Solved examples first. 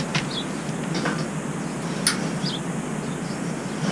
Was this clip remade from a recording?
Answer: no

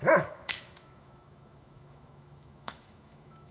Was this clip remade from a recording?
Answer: yes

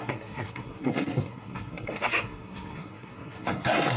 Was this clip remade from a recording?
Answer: yes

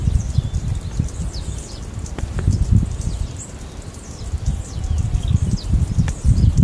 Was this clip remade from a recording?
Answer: no